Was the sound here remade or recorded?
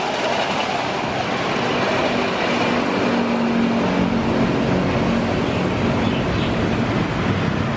recorded